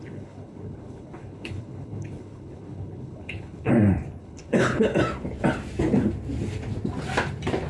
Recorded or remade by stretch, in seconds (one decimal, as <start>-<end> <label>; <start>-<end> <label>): 0.0-3.7 remade; 3.7-4.2 recorded; 4.2-4.9 remade; 4.9-7.7 recorded